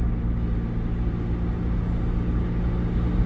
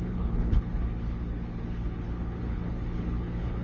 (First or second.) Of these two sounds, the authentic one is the first